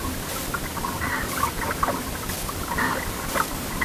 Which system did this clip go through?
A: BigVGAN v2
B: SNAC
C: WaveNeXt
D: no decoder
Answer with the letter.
D